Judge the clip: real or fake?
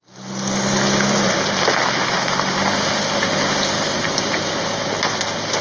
real